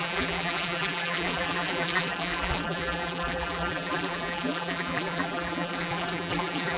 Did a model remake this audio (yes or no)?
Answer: yes